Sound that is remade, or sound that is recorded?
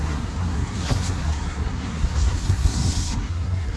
remade